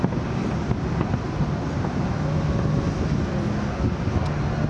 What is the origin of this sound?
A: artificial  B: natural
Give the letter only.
B